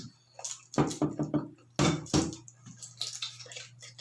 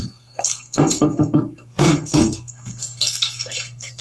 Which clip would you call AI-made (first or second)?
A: second